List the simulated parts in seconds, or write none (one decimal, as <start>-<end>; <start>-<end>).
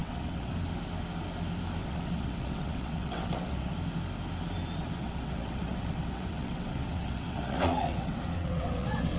0.0-0.5; 1.8-3.7; 4.8-9.2